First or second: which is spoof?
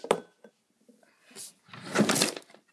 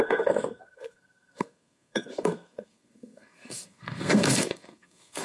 second